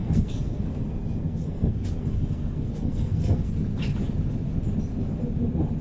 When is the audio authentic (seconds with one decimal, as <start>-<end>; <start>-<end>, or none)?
3.5-5.8